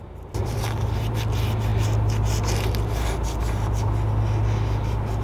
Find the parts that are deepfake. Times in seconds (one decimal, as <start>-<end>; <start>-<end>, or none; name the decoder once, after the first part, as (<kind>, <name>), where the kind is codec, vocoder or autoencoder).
0.4-1.1 (vocoder, BigVGAN v2)